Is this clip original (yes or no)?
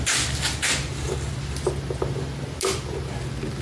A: yes